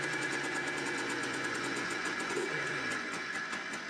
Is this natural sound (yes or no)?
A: no